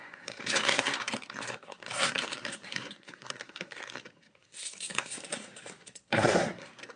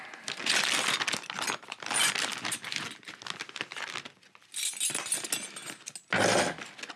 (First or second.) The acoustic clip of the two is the second